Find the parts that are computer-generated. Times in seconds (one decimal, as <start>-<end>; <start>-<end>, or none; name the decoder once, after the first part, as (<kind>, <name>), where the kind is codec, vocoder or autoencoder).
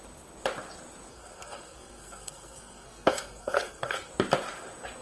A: 1.1-4.1 (codec, SNAC)